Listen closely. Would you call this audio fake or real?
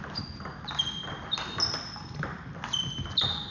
real